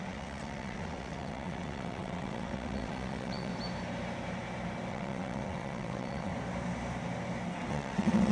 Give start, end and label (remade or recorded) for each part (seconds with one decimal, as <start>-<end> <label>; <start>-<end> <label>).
0.0-3.5 remade; 3.5-4.9 recorded; 4.9-6.3 remade; 6.3-7.7 recorded; 7.7-8.3 remade